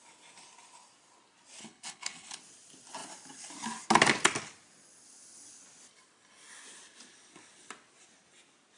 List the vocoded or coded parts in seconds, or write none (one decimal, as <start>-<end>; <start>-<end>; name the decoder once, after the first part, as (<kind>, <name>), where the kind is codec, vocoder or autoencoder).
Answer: 1.6-2.4 (codec, HILCodec)